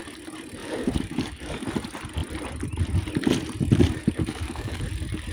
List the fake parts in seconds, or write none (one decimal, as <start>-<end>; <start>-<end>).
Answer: 0.6-1.6; 4.0-4.8